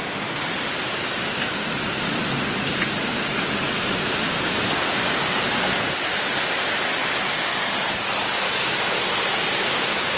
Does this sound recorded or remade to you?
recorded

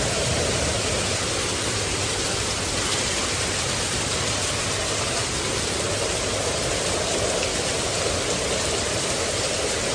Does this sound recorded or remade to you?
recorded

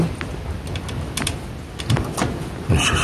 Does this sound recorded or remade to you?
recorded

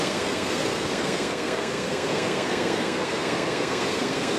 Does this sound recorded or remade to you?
remade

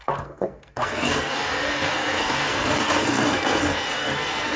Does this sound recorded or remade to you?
remade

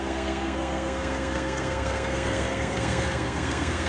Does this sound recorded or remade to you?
remade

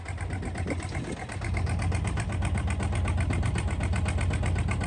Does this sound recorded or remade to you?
recorded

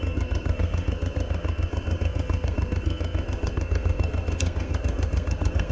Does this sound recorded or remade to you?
remade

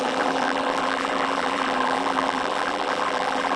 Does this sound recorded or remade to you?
remade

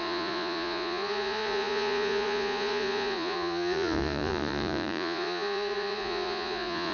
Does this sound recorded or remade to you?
remade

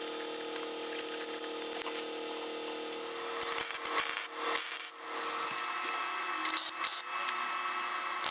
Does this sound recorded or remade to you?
recorded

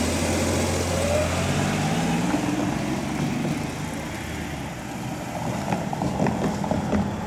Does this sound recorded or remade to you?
recorded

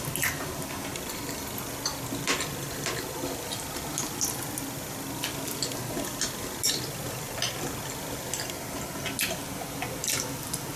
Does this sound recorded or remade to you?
recorded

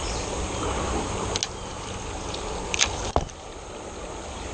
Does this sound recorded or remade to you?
recorded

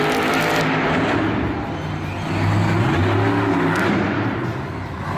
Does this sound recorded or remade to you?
recorded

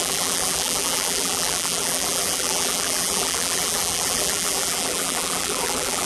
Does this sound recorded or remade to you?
remade